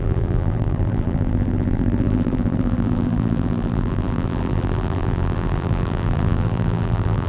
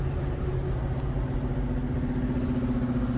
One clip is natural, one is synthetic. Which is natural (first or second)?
second